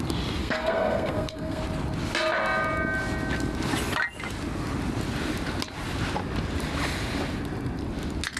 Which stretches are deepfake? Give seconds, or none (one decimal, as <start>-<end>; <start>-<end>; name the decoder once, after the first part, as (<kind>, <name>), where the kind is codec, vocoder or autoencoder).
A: 0.4-1.6 (codec, SNAC)